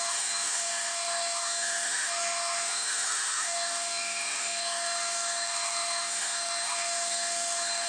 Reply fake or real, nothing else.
fake